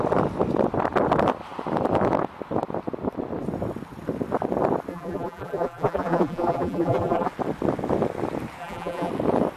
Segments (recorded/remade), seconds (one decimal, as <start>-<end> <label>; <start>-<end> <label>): 0.0-4.9 recorded; 4.9-7.3 remade; 7.3-8.6 recorded; 8.6-9.1 remade; 9.1-9.6 recorded